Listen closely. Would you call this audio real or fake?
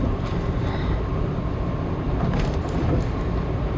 real